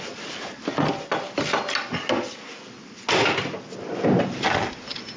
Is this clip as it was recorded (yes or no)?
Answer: yes